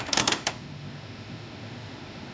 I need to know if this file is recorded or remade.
remade